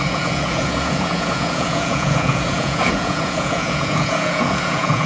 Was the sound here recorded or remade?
remade